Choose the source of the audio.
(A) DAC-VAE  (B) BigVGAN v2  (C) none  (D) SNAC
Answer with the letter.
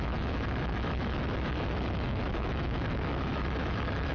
A